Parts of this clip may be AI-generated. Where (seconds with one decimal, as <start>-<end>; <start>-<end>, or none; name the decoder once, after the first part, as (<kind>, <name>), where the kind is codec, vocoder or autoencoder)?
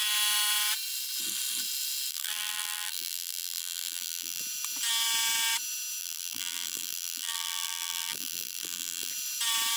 2.1-4.4 (vocoder, BigVGAN v2); 6.0-9.1